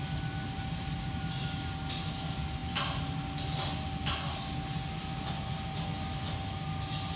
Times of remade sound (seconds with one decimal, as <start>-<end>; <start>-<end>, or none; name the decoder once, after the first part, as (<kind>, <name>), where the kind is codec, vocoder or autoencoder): none